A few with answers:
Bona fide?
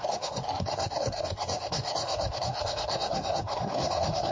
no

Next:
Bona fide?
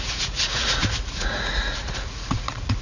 no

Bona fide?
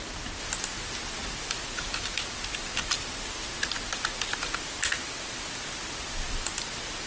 yes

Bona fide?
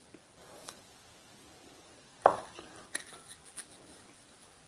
no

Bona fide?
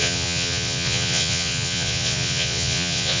no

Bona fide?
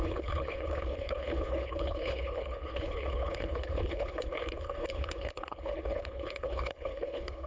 no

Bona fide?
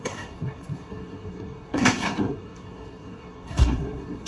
no